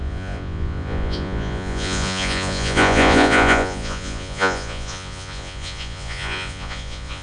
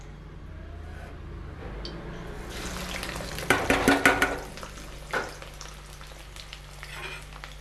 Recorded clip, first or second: second